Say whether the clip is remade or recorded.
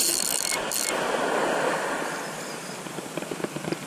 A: recorded